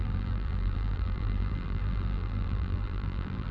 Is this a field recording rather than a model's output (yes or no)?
no